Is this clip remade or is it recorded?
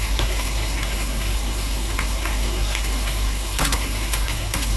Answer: remade